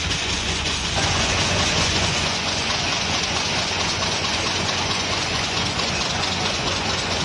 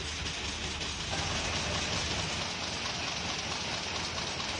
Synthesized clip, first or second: first